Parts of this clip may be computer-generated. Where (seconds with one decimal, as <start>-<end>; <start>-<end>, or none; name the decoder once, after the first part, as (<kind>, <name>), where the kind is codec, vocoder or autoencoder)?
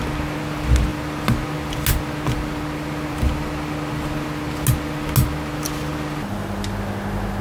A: none